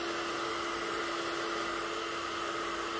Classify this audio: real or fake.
real